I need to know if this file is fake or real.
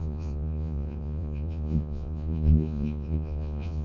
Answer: fake